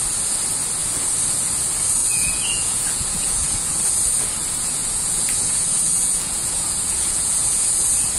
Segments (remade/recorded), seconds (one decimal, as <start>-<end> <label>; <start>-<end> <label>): 0.0-2.0 recorded; 2.0-3.7 remade; 3.7-4.8 recorded; 4.8-7.7 remade; 7.7-8.2 recorded